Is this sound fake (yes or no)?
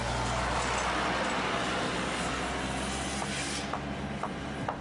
no